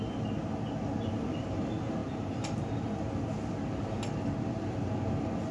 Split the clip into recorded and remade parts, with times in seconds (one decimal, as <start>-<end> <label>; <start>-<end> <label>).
0.0-5.5 recorded